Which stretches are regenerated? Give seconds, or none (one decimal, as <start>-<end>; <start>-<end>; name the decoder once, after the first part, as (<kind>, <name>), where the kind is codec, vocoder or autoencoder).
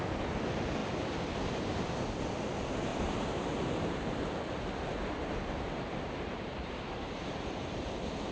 2.9-4.4 (vocoder, BigVGAN v2); 5.3-7.8